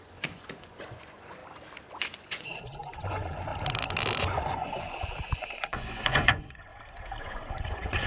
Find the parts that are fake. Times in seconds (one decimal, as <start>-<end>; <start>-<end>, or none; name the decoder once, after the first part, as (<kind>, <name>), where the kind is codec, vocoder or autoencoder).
0.0-1.4 (vocoder, Vocos); 2.0-3.5; 4.2-6.7; 7.2-8.1